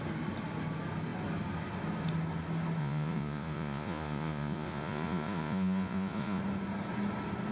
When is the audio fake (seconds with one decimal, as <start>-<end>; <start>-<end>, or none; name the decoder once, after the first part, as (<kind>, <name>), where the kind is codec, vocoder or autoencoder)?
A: 2.8-6.4 (vocoder, Vocos)